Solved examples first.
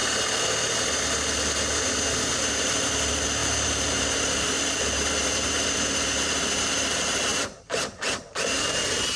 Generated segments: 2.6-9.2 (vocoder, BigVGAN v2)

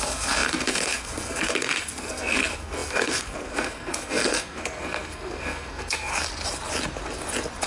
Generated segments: 0.0-6.1 (codec, SNAC)

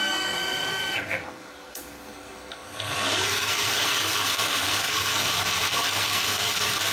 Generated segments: 0.0-6.9 (codec, SNAC)